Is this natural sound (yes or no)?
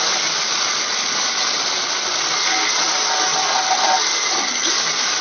yes